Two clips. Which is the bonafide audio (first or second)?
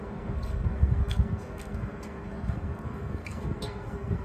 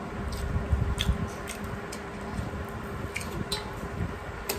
second